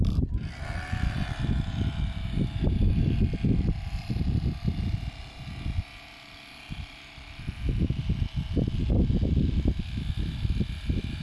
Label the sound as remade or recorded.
recorded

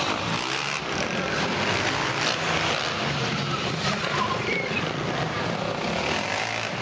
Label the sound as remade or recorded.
recorded